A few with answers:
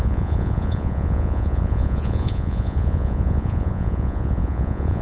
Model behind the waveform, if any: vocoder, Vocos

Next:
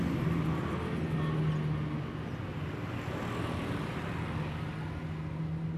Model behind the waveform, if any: none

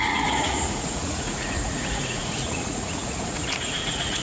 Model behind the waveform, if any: vocoder, Vocos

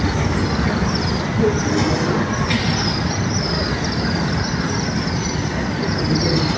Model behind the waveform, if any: none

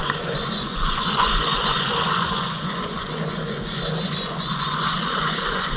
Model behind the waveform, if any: vocoder, Vocos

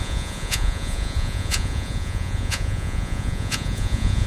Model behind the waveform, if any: vocoder, Vocos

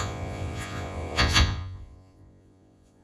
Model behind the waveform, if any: vocoder, Vocos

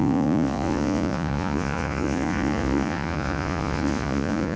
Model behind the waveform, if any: vocoder, Vocos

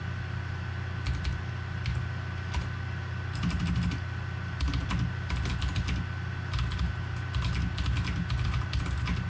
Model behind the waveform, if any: none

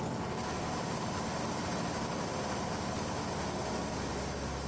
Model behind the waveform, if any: none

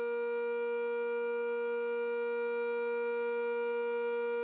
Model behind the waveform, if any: none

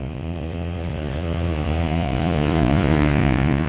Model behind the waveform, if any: vocoder, Vocos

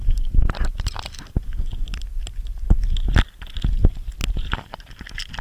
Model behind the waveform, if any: none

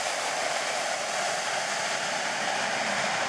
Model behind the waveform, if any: none